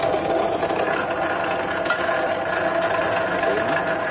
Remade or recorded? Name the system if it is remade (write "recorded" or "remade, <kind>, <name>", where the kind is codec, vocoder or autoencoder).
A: recorded